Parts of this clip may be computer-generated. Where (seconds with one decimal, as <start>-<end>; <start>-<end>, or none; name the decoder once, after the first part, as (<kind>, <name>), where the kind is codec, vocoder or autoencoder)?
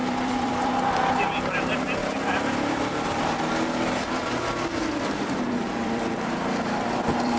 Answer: 0.0-2.0 (vocoder, BigVGAN v2); 5.4-7.4